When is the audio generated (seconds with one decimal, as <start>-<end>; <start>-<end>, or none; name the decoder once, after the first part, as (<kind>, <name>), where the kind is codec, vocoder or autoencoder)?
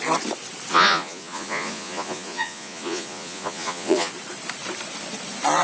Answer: 0.7-4.1 (vocoder, Vocos)